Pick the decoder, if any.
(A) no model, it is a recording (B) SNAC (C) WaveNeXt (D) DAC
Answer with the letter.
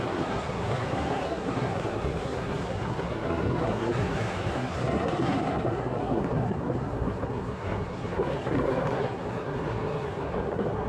B